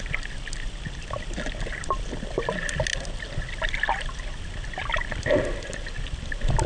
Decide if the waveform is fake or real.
real